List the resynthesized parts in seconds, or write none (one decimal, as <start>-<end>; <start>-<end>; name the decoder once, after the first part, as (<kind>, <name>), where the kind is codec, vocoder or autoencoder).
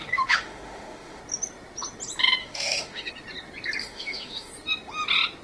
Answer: 0.0-1.2 (autoencoder, DAC-VAE); 2.4-3.1; 3.8-4.5